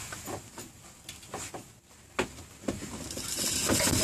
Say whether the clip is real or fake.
real